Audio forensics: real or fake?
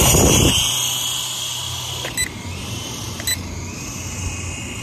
real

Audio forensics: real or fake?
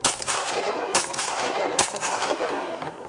fake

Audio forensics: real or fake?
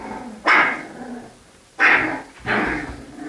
real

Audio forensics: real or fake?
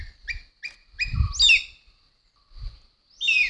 real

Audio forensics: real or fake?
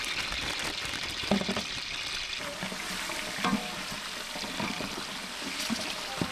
real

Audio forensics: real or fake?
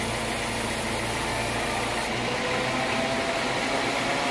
real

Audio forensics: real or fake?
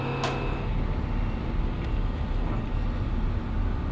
real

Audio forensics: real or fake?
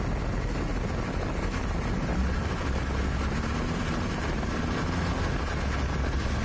real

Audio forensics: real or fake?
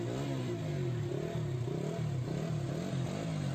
real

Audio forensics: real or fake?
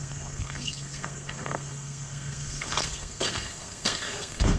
fake